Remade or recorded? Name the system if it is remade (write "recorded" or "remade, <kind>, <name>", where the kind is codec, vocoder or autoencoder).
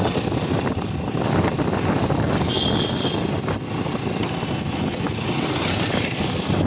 recorded